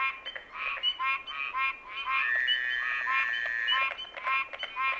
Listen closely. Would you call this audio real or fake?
real